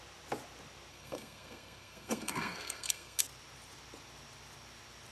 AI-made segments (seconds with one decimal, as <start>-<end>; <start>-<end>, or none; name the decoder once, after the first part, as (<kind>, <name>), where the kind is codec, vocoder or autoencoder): 0.9-3.2 (codec, SNAC)